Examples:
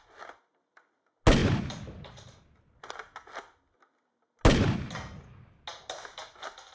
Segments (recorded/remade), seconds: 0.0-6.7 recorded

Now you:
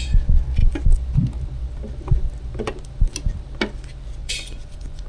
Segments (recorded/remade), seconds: 0.0-4.2 recorded; 4.2-5.1 remade

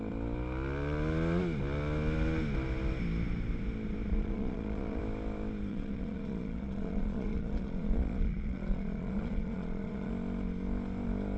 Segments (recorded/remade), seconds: 0.0-4.1 recorded; 4.1-5.0 remade; 5.0-5.7 recorded; 5.7-10.1 remade; 10.1-11.4 recorded

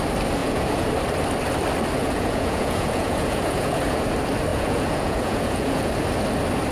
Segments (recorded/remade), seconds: 0.0-0.4 recorded; 0.4-0.9 remade; 0.9-2.0 recorded; 2.0-4.0 remade; 4.0-4.5 recorded; 4.5-5.9 remade; 5.9-6.7 recorded